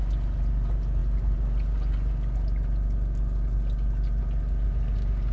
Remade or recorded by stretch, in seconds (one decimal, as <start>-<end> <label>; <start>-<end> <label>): 0.0-5.3 recorded